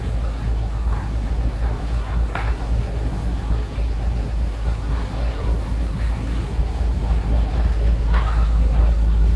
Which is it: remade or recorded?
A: remade